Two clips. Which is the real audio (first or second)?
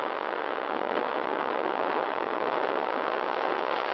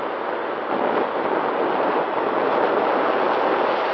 second